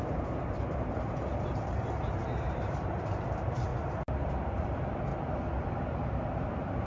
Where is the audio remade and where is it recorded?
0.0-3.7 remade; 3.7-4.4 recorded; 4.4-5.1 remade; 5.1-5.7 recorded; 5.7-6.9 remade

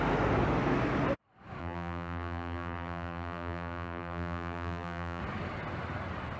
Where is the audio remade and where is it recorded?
0.0-1.6 recorded; 1.6-5.2 remade; 5.2-6.4 recorded

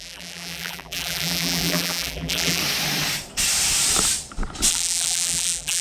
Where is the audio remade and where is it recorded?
0.0-2.6 remade; 2.6-4.7 recorded; 4.7-5.8 remade